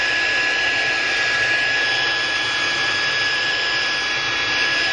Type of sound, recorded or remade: recorded